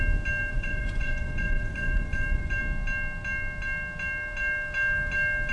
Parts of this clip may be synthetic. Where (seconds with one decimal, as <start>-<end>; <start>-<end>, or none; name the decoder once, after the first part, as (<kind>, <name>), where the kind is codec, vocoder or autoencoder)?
0.4-2.6 (vocoder, Vocos)